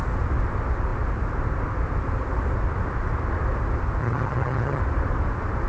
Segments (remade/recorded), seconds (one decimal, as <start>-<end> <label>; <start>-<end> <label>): 0.0-4.0 recorded; 4.0-4.8 remade; 4.8-5.7 recorded